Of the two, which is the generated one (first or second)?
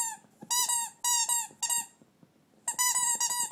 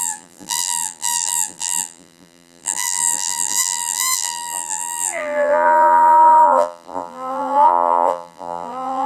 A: second